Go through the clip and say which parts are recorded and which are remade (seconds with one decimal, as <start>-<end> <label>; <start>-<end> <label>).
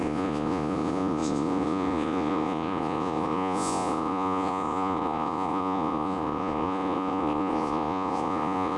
0.0-8.8 remade